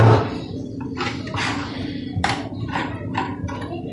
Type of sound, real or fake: fake